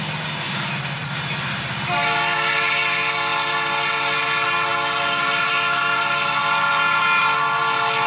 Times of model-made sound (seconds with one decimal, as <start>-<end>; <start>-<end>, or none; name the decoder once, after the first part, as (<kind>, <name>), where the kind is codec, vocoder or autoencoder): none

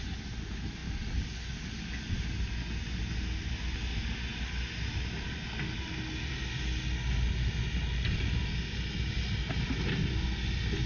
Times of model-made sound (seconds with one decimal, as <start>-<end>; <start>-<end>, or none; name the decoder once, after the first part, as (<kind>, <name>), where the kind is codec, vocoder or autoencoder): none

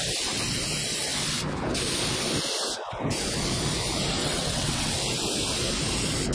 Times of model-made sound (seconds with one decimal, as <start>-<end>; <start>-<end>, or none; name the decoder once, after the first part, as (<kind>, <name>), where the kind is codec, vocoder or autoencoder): 4.2-5.0 (vocoder, WaveNeXt)

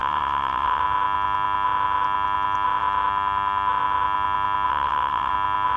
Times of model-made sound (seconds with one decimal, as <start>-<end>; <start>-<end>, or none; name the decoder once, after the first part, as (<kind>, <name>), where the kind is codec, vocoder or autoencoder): 0.0-0.8 (vocoder, WaveNeXt); 4.7-5.3

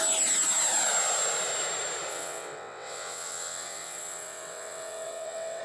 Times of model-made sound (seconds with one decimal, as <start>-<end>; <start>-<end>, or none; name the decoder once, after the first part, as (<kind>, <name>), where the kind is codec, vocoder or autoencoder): 2.1-5.6 (vocoder, WaveNeXt)

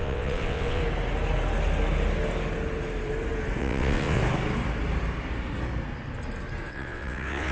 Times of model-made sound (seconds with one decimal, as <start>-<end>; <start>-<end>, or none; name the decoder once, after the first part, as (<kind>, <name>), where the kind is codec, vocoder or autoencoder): 0.0-0.8 (vocoder, WaveNeXt); 3.6-4.2; 6.7-7.5